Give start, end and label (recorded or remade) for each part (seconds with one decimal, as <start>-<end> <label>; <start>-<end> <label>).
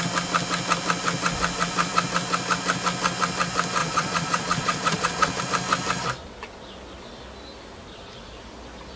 0.0-3.8 recorded; 3.8-5.4 remade; 5.4-9.0 recorded